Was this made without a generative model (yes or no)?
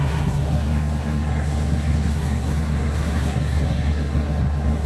no